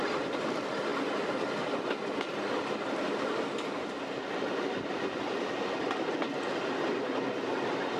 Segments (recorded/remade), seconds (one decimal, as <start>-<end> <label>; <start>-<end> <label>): 0.0-8.0 recorded